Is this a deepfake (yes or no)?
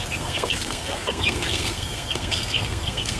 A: yes